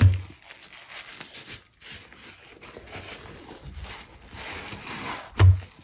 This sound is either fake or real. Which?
real